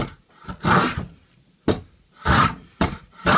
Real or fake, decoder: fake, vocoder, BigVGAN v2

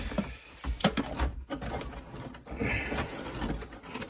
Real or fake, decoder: real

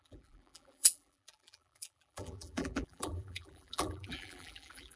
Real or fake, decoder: fake, vocoder, BigVGAN v2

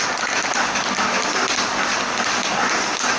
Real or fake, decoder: real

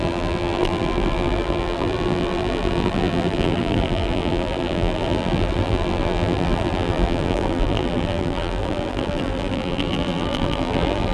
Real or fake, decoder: fake, vocoder, BigVGAN v2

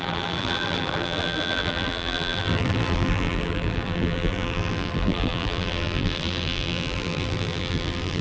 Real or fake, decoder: fake, vocoder, BigVGAN v2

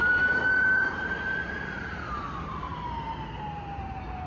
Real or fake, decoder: fake, vocoder, BigVGAN v2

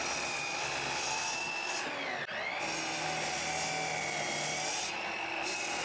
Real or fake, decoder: real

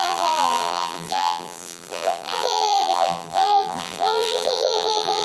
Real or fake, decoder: fake, vocoder, BigVGAN v2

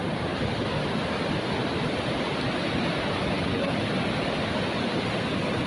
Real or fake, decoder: real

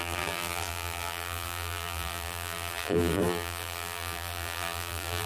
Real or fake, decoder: fake, vocoder, BigVGAN v2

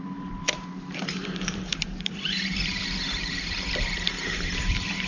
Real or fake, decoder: fake, vocoder, BigVGAN v2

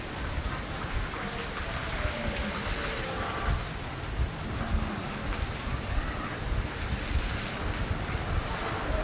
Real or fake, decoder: real